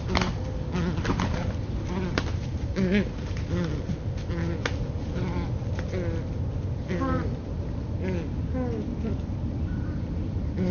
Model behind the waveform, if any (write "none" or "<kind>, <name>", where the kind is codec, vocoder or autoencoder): none